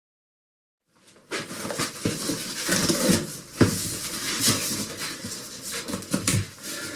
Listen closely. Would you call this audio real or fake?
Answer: fake